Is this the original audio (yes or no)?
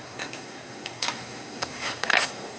no